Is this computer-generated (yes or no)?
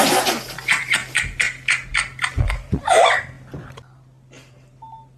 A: no